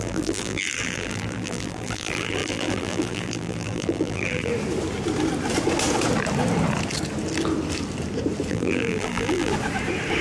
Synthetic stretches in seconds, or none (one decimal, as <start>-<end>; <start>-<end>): 0.0-4.5; 8.5-9.5